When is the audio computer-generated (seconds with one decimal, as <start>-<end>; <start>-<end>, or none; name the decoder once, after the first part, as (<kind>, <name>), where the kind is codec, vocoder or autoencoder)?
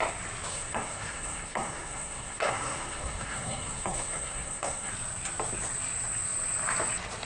0.5-4.9 (codec, SNAC)